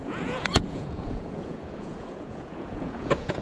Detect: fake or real fake